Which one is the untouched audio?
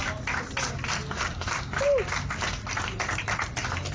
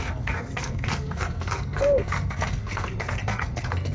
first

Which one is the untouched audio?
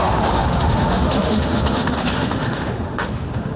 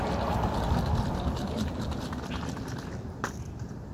second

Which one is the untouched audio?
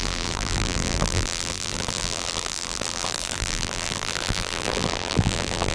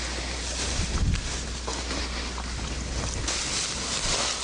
second